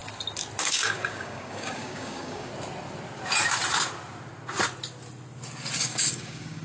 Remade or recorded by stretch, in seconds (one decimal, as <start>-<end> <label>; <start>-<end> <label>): 0.0-0.6 recorded; 0.6-2.5 remade; 2.5-5.8 recorded; 5.8-6.6 remade